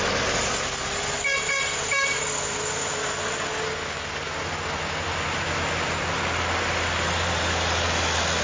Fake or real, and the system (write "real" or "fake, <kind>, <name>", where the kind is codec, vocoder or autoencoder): real